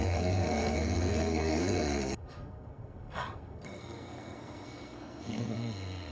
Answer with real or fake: fake